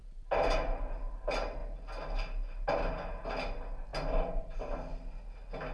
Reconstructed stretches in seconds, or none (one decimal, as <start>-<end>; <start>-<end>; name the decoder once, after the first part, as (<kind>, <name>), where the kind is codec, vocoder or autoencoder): none